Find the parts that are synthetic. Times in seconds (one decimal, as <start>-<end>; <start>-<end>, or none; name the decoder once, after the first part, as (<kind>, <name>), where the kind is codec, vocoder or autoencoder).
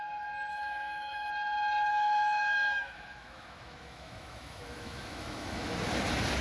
0.5-1.3 (autoencoder, DAC-VAE); 1.9-5.7